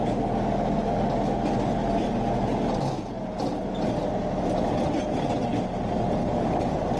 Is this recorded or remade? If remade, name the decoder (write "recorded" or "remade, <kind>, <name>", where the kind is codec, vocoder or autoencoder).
recorded